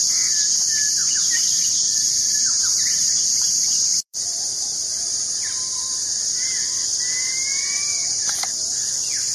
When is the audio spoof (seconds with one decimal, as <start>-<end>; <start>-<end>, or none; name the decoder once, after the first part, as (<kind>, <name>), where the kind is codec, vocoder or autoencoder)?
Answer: 1.0-6.2 (vocoder, BigVGAN v2); 8.0-8.8